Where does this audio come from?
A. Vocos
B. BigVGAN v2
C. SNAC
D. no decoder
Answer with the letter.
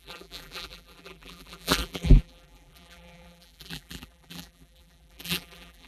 B